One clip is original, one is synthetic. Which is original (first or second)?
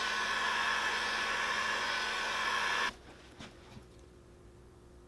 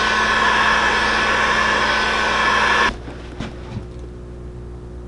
second